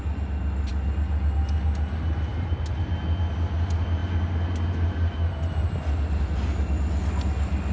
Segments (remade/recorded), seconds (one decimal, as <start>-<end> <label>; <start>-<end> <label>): 0.0-7.7 recorded